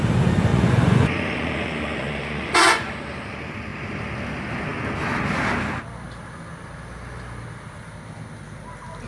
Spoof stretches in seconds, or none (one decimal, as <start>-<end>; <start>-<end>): 0.5-2.9